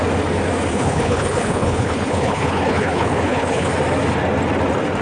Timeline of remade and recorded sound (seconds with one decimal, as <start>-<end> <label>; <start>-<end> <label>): 0.0-0.7 recorded; 0.7-3.7 remade; 3.7-5.0 recorded